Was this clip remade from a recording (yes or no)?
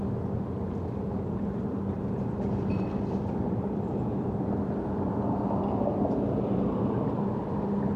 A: no